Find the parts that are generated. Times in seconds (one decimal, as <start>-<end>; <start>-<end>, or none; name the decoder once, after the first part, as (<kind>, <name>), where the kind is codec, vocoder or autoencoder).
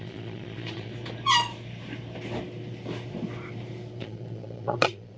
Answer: 0.0-0.9 (vocoder, Vocos); 4.0-5.2